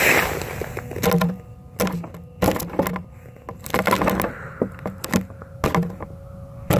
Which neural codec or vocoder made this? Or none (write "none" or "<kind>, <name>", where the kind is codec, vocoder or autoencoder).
none